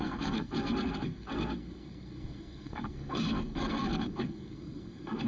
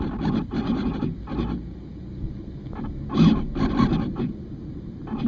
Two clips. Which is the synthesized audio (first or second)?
first